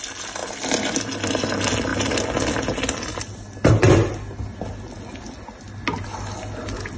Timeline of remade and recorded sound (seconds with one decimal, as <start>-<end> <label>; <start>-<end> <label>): 0.0-7.0 recorded

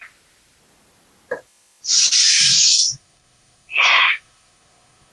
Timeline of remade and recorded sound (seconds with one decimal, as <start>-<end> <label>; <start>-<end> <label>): 0.0-2.3 recorded; 2.3-5.1 remade